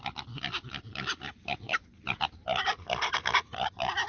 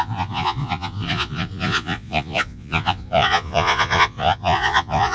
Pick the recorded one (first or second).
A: first